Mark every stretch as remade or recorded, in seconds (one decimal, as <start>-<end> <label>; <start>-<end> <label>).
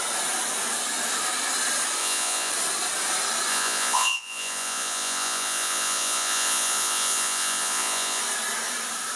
0.0-2.0 recorded; 2.0-2.5 remade; 2.5-3.5 recorded; 3.5-8.2 remade; 8.2-9.2 recorded